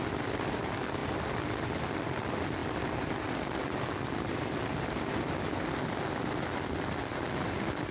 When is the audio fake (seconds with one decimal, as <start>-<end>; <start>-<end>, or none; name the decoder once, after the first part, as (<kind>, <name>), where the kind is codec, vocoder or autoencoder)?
none